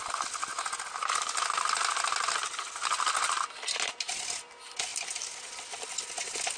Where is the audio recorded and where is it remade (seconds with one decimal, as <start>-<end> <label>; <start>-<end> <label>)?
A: 0.0-6.6 recorded